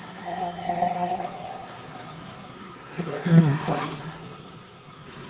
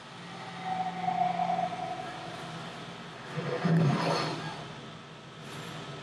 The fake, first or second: first